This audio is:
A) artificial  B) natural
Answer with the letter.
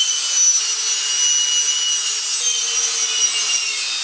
B